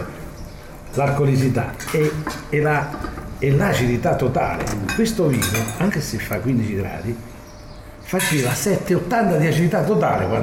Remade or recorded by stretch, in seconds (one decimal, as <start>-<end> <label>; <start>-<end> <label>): 0.0-8.1 recorded; 8.1-9.0 remade; 9.0-10.4 recorded